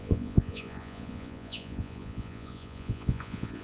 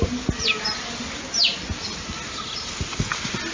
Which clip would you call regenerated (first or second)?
first